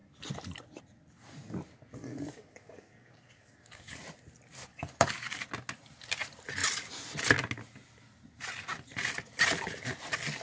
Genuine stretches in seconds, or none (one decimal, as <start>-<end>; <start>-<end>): 0.0-2.0; 4.0-4.7; 5.4-10.4